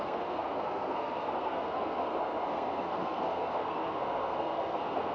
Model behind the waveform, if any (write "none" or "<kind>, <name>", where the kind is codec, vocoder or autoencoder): codec, SNAC